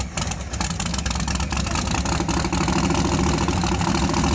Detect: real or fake real